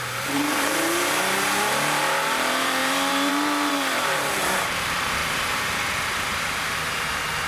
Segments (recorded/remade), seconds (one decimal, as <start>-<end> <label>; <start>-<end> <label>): 0.0-7.5 remade